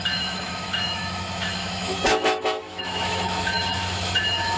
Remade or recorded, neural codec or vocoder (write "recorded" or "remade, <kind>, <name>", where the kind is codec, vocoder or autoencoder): remade, autoencoder, DAC-VAE